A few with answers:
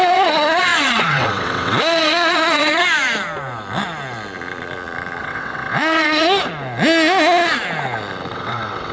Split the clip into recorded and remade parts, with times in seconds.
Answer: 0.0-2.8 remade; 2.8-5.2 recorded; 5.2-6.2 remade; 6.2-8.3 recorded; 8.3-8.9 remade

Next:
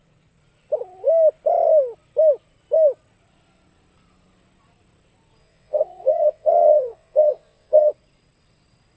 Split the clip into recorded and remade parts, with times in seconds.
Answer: 0.0-5.4 recorded; 5.4-7.9 remade; 7.9-9.0 recorded

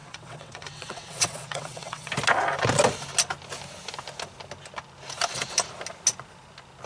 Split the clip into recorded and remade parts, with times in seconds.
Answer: 0.0-2.1 remade; 2.1-6.9 recorded

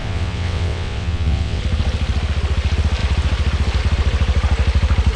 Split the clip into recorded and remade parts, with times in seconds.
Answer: 0.0-1.6 remade; 1.6-5.2 recorded

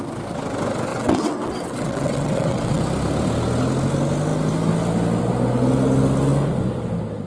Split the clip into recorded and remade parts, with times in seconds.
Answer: 0.0-0.9 recorded; 0.9-2.8 remade; 2.8-7.3 recorded

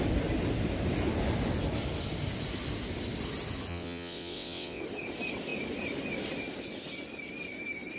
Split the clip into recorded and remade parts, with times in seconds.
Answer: 0.0-3.7 recorded; 3.7-4.8 remade; 4.8-8.0 recorded

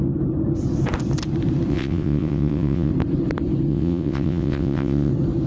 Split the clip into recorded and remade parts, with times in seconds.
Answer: 0.0-1.7 recorded; 1.7-2.9 remade; 2.9-3.7 recorded; 3.7-5.1 remade; 5.1-5.5 recorded